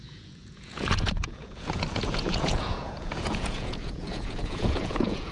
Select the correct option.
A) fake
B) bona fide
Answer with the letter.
A